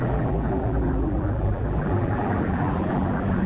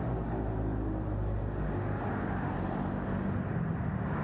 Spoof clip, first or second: first